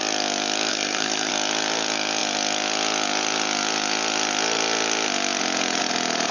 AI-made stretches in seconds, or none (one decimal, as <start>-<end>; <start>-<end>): 0.7-1.3